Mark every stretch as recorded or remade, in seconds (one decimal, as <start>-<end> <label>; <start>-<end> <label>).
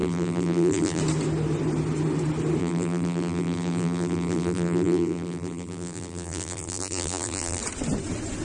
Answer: 0.0-1.0 remade; 1.0-2.6 recorded; 2.6-7.6 remade; 7.6-8.4 recorded